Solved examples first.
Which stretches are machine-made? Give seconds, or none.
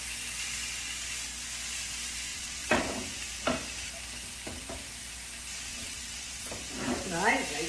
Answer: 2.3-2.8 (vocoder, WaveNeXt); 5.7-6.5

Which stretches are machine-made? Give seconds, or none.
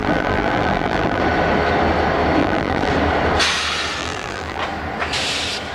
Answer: 0.0-1.2 (vocoder, BigVGAN v2); 2.4-2.9; 4.0-4.6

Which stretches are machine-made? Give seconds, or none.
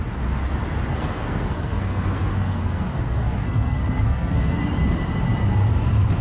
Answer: 0.9-4.6 (codec, SNAC)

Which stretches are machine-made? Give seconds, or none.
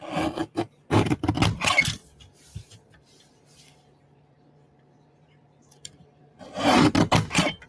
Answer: 0.4-1.4 (vocoder, BigVGAN v2); 2.3-6.9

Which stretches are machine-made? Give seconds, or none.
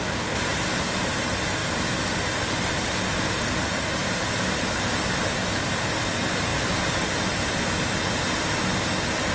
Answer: none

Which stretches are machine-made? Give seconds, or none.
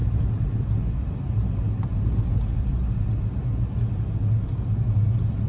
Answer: none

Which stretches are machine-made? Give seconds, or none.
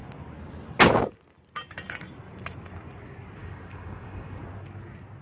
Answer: 3.4-4.4 (codec, DAC)